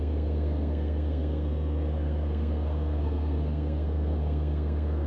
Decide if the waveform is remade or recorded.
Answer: remade